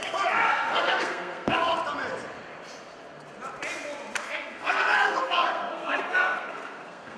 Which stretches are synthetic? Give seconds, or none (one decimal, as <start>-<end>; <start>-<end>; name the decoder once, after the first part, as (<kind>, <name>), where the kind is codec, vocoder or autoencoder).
0.0-1.7 (codec, SNAC); 4.2-7.2